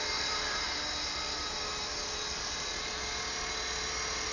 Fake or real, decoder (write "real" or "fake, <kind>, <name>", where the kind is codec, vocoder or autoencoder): real